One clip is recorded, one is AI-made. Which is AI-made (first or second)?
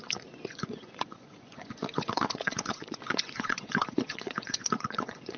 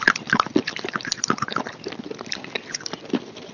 first